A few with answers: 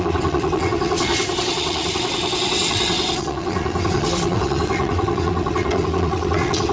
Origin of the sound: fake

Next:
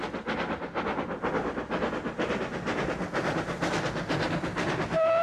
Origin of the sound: real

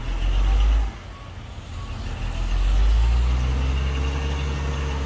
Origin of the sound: real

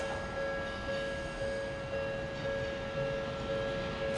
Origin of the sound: real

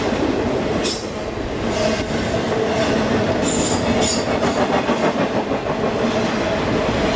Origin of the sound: real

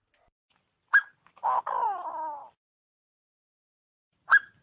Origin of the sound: real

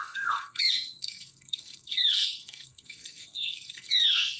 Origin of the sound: fake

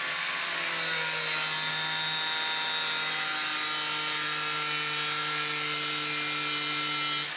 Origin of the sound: real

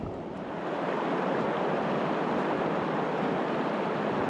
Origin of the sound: real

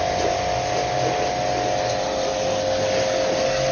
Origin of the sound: real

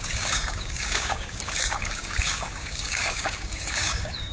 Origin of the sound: fake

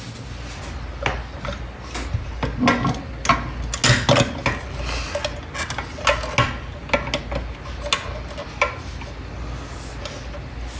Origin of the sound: real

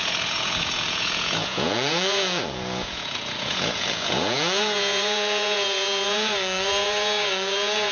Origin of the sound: fake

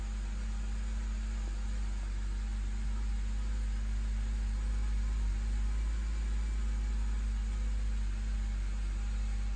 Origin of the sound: real